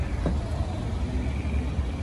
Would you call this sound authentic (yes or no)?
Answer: yes